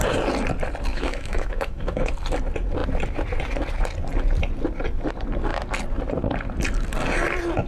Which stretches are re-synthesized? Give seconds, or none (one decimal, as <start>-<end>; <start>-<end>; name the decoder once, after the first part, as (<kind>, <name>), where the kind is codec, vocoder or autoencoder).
0.9-2.1 (autoencoder, DAC-VAE)